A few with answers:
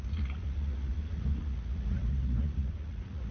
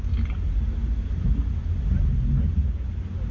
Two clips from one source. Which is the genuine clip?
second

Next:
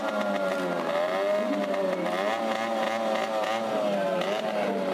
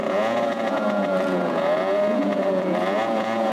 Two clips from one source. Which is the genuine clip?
first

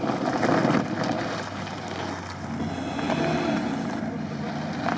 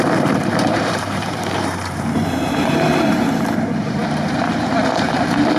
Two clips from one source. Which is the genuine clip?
first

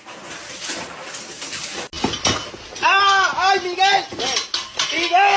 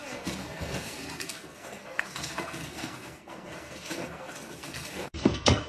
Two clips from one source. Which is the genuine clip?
first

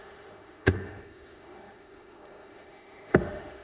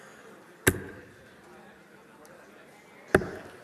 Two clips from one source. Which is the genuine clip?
second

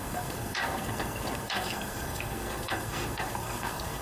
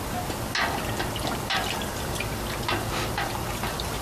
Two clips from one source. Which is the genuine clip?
second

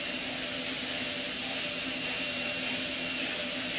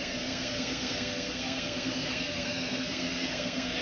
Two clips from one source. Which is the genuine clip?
first